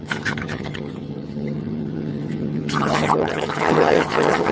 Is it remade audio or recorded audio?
remade